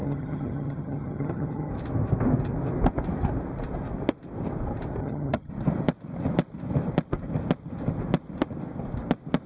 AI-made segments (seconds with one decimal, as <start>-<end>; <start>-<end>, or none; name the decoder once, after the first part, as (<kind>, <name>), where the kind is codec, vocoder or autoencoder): 0.0-1.7 (vocoder, HiFi-GAN); 5.0-5.5